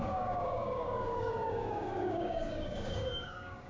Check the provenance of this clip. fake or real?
fake